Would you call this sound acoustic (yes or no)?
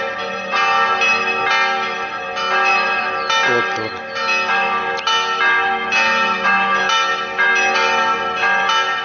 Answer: yes